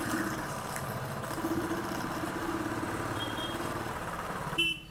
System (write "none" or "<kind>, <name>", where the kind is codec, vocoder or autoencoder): vocoder, BigVGAN v2